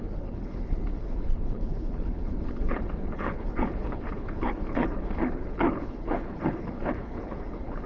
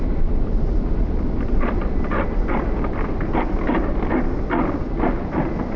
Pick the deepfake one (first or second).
first